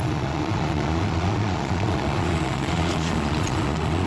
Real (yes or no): no